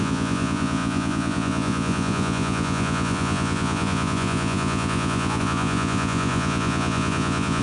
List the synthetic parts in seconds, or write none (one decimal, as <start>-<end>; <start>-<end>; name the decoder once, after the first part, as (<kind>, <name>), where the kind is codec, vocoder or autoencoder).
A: 0.0-7.6 (vocoder, Vocos)